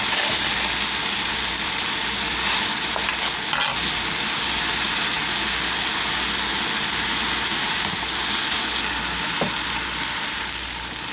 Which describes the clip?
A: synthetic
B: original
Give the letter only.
B